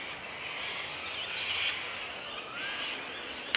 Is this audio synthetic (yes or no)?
no